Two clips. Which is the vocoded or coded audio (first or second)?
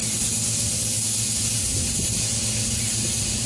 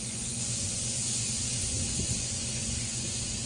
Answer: second